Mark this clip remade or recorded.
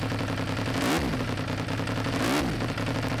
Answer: recorded